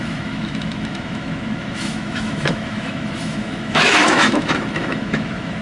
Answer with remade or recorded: remade